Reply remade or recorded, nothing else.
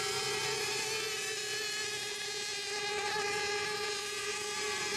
recorded